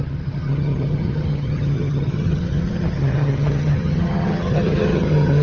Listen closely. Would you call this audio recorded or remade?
remade